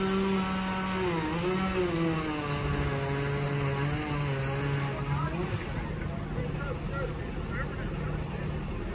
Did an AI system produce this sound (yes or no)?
no